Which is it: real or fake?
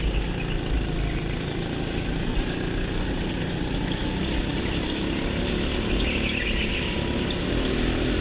real